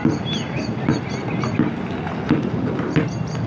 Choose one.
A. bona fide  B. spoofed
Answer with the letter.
A